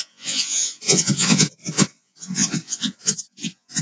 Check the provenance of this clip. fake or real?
fake